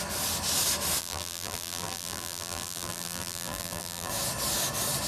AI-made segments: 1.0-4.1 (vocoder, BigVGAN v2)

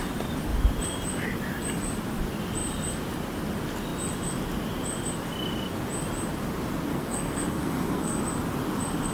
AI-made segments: 6.9-8.2 (codec, SNAC)